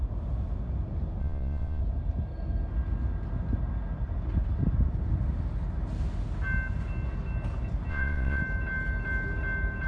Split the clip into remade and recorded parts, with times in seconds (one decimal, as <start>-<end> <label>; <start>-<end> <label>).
0.0-1.2 recorded; 1.2-1.8 remade; 1.8-7.9 recorded; 7.9-8.4 remade; 8.4-9.9 recorded